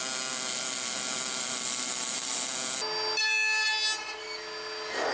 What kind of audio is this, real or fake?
real